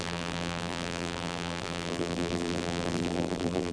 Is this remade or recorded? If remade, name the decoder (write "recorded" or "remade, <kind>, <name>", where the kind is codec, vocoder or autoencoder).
remade, vocoder, BigVGAN v2